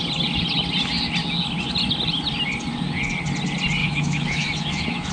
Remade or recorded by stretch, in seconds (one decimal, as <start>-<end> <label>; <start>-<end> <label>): 0.0-3.8 recorded; 3.8-5.1 remade

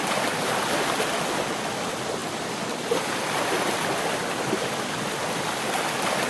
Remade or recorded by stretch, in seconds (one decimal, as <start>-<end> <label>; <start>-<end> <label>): 0.0-2.2 recorded; 2.2-3.6 remade; 3.6-6.3 recorded

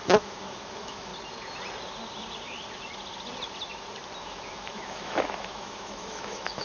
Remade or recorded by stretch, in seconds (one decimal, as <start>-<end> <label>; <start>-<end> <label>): 0.0-1.1 remade; 1.1-4.2 recorded; 4.2-6.6 remade